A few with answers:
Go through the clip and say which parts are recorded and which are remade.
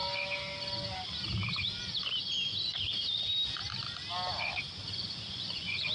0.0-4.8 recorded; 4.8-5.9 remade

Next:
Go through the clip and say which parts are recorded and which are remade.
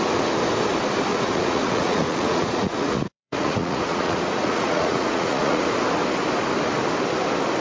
0.0-1.1 recorded; 1.1-5.7 remade; 5.7-7.6 recorded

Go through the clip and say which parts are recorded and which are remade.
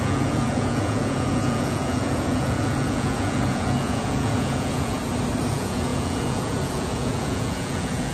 0.0-5.0 remade; 5.0-5.5 recorded; 5.5-8.1 remade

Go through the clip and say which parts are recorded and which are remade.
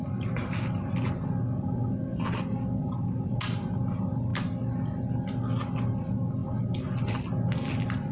0.0-8.1 recorded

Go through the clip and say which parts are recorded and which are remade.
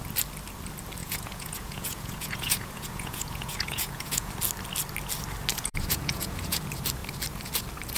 0.0-1.0 recorded; 1.0-4.3 remade; 4.3-5.5 recorded; 5.5-6.6 remade; 6.6-8.0 recorded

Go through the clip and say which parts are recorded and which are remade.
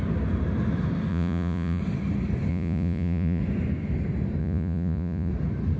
0.0-1.1 recorded; 1.1-1.8 remade; 1.8-2.5 recorded; 2.5-3.4 remade; 3.4-4.4 recorded; 4.4-5.3 remade; 5.3-5.8 recorded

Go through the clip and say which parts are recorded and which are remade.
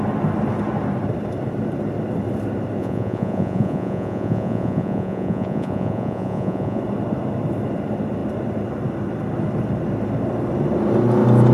0.0-2.8 recorded; 2.8-6.8 remade; 6.8-11.5 recorded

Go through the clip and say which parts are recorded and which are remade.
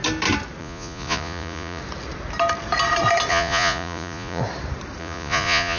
0.0-0.6 recorded; 0.6-1.8 remade; 1.8-3.3 recorded; 3.3-4.4 remade; 4.4-5.0 recorded; 5.0-5.8 remade